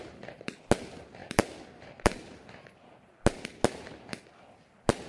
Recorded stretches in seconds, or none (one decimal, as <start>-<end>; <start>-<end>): 0.0-5.1